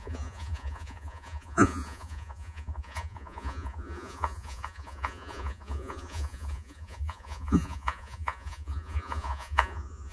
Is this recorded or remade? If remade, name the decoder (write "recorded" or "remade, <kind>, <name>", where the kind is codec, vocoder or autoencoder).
remade, vocoder, Vocos